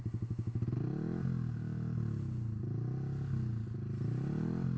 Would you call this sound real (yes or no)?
yes